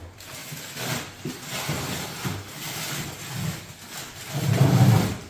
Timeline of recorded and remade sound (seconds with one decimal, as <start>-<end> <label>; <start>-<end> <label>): 0.0-5.3 recorded